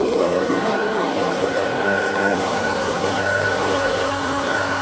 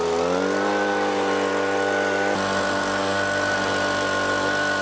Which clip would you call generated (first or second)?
first